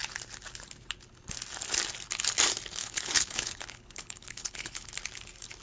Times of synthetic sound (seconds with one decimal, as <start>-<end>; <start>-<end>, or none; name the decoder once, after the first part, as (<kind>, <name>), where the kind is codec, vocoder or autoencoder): 2.8-4.9 (codec, HILCodec)